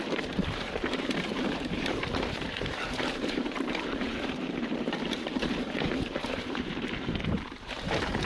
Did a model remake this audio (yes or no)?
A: yes